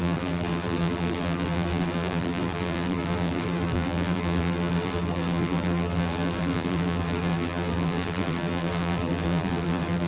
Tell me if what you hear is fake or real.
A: fake